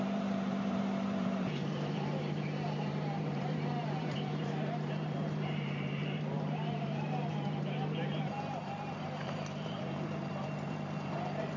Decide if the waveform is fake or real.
fake